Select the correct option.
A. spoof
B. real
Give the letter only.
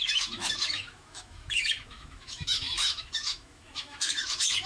A